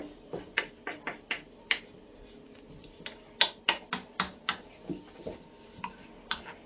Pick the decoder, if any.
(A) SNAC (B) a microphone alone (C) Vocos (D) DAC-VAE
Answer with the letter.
B